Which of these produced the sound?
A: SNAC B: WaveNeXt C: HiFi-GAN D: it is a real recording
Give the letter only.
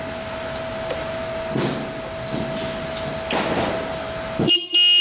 D